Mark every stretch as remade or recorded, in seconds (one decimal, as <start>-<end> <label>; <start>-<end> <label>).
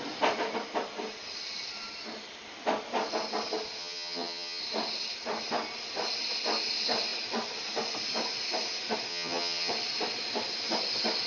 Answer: 0.0-3.8 recorded; 3.8-4.6 remade; 4.6-9.1 recorded; 9.1-9.7 remade; 9.7-11.3 recorded